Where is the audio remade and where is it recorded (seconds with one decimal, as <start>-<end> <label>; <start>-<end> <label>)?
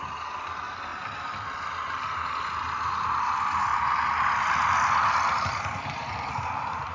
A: 0.0-6.9 recorded